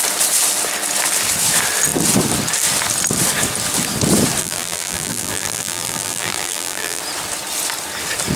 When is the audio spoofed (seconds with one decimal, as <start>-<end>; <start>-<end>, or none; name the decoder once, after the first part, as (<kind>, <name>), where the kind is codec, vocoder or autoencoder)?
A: 4.4-7.0 (vocoder, BigVGAN v2)